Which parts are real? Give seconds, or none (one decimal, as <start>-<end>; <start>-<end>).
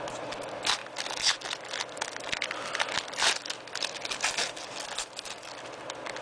0.0-6.2